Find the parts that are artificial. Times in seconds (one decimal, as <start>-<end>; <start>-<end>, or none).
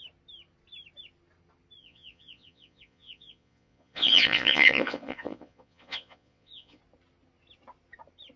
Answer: 1.8-6.8